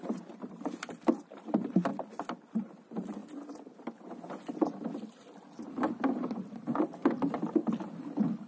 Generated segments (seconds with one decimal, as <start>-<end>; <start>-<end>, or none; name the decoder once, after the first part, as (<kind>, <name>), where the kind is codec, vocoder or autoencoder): 0.0-1.9 (vocoder, BigVGAN v2); 2.5-3.2